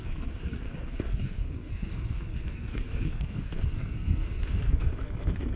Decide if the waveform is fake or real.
fake